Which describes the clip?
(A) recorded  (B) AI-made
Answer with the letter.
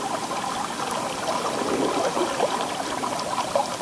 A